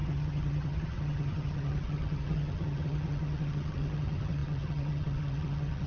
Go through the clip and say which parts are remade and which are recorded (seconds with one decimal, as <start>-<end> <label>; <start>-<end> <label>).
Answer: 0.0-5.9 remade